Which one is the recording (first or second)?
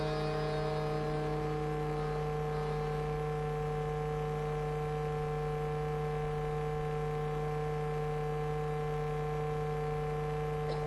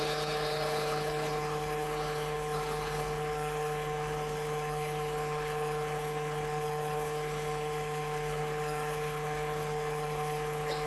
first